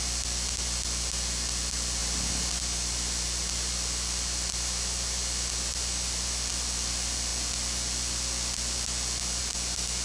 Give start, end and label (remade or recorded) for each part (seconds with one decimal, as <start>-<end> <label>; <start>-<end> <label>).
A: 0.0-10.0 recorded